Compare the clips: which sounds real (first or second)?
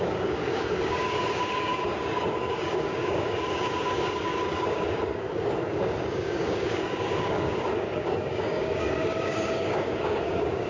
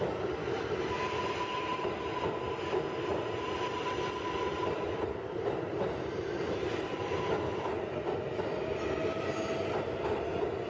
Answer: second